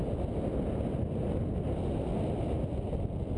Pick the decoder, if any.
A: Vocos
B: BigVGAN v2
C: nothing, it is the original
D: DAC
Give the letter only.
C